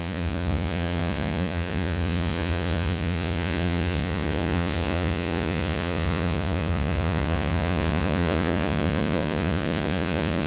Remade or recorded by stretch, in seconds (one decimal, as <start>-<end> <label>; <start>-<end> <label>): 0.0-10.5 remade